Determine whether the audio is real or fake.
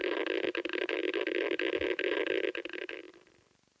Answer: real